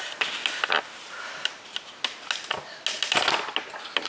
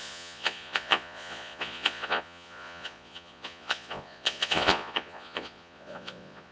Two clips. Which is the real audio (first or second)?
first